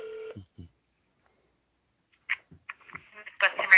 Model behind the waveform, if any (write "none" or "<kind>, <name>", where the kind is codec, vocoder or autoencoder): none